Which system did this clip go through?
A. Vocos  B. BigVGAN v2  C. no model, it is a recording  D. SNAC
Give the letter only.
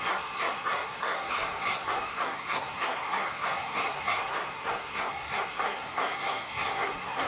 D